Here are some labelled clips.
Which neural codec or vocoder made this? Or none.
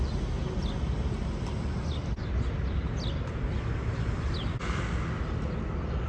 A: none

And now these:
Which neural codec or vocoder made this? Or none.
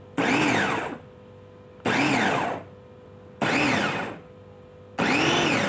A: none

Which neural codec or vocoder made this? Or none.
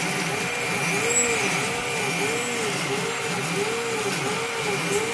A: none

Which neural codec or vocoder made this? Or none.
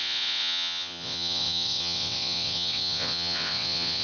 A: vocoder, WaveNeXt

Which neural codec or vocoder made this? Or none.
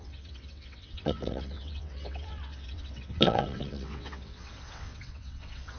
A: vocoder, WaveNeXt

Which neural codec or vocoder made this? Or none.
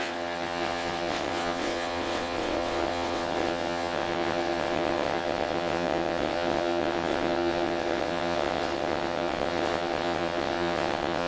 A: vocoder, WaveNeXt